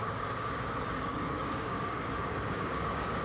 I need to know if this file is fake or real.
fake